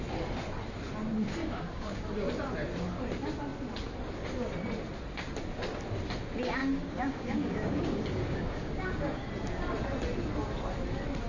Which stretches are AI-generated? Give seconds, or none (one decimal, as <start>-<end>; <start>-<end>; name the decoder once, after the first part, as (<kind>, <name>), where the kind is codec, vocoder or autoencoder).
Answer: 1.4-2.0 (codec, DAC); 6.6-9.3